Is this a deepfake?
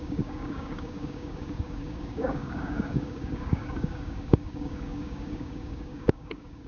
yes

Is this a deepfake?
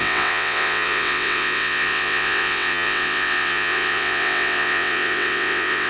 yes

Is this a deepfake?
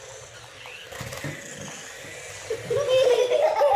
no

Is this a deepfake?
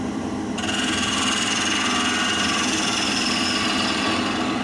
no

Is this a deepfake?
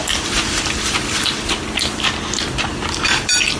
no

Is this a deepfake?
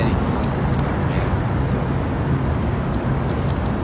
no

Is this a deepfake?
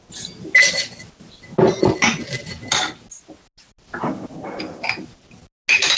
no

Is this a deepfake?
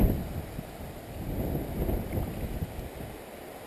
no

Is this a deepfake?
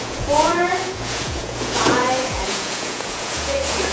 yes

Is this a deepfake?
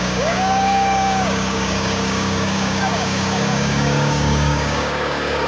yes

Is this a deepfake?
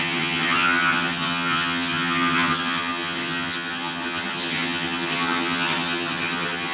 yes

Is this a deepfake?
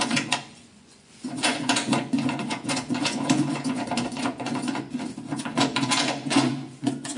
yes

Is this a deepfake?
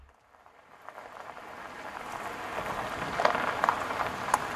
yes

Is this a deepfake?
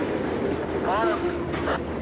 no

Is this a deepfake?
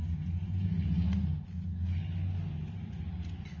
no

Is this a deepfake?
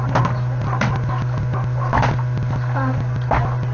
no